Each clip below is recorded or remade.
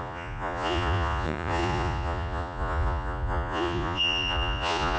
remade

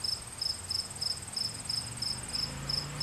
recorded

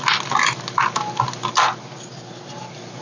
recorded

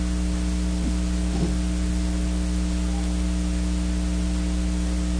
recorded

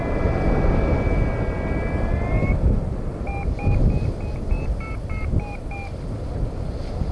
recorded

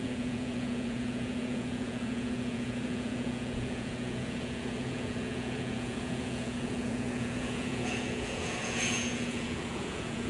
remade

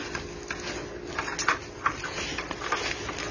recorded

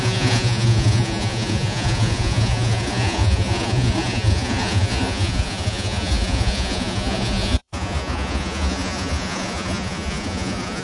remade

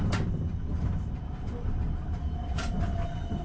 recorded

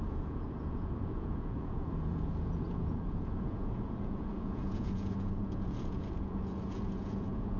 remade